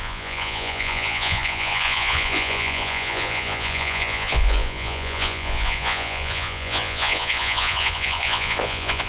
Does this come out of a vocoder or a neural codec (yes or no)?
yes